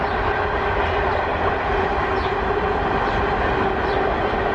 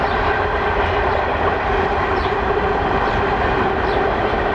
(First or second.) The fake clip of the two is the second